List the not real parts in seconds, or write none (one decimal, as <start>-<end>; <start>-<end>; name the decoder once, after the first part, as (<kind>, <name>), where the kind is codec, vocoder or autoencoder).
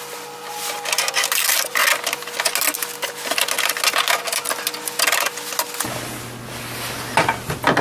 none